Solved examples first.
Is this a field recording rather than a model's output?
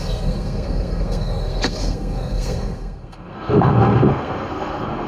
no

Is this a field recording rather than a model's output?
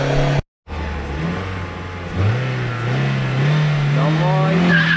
yes